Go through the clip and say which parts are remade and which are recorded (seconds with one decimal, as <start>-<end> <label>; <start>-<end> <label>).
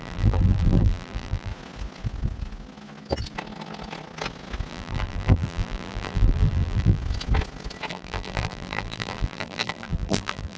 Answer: 0.0-1.5 remade; 1.5-4.7 recorded; 4.7-7.0 remade; 7.0-7.9 recorded; 7.9-10.6 remade